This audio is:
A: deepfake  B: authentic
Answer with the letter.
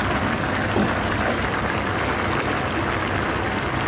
A